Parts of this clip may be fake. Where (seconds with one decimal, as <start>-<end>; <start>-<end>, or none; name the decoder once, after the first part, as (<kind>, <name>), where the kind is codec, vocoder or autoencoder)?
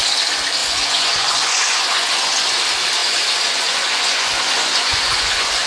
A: 0.6-2.6 (vocoder, Vocos); 3.0-5.7